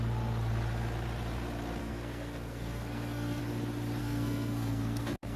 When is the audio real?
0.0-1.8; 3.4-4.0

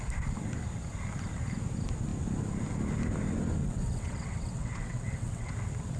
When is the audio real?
0.0-3.6; 5.5-6.0

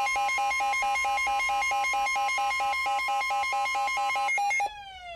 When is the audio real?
0.0-5.2